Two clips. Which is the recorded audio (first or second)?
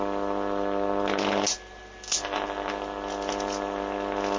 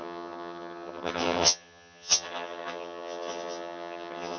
first